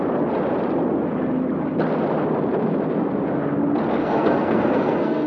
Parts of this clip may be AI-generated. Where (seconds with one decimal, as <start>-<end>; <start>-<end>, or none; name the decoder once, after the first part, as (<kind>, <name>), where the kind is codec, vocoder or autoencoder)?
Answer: 4.0-5.3 (codec, SNAC)

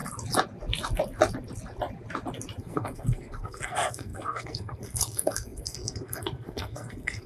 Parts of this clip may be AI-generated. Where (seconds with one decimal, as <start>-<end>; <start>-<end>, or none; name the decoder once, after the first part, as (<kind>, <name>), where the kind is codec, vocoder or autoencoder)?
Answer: 2.6-7.3 (codec, SNAC)

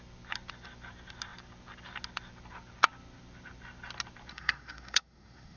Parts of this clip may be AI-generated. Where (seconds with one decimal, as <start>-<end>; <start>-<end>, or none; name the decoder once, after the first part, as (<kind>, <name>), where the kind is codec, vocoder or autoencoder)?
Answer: 4.3-5.6 (codec, SNAC)

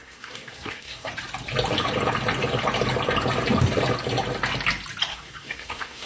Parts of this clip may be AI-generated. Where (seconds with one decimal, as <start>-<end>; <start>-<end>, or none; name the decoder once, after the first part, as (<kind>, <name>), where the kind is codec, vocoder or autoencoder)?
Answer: 0.0-1.1 (codec, SNAC); 5.1-6.1

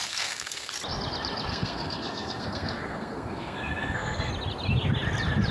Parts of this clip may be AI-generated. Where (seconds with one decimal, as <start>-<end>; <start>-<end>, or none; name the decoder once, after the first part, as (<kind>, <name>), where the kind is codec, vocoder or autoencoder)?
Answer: 0.0-0.7 (codec, SNAC); 1.5-4.3

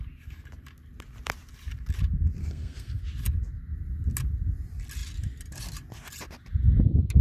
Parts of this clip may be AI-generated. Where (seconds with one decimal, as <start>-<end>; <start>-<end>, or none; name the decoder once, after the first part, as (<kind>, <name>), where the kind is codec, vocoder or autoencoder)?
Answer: 2.4-3.0 (codec, SNAC)

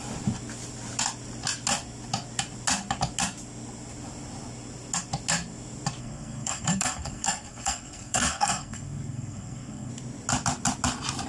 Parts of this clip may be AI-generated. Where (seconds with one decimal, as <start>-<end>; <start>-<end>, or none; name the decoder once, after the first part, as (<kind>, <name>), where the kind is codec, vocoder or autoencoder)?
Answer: 6.0-9.9 (codec, SNAC)

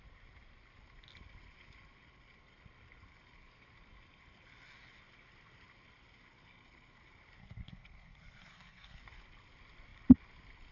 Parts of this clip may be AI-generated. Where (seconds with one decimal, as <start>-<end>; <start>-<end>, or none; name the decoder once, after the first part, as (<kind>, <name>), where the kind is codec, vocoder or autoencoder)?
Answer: 7.4-9.0 (codec, SNAC)